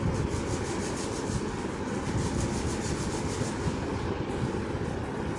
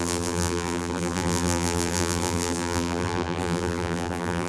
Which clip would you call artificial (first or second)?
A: second